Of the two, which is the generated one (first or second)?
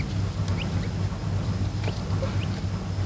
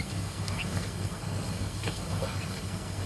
second